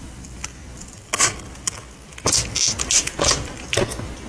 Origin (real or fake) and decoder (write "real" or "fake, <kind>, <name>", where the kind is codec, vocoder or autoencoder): real